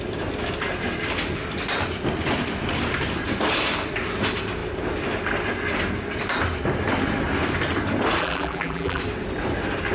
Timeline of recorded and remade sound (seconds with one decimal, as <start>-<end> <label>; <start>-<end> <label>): 0.0-8.2 recorded; 8.2-9.0 remade; 9.0-9.9 recorded